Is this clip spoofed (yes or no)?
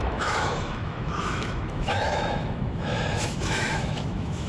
yes